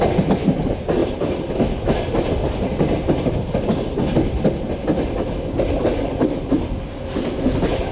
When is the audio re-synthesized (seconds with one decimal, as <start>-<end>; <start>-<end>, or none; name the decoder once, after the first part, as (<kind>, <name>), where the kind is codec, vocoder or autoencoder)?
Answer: none